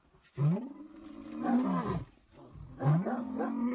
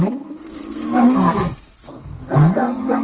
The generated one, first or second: second